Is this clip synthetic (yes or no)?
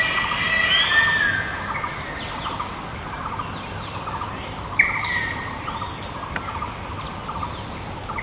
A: no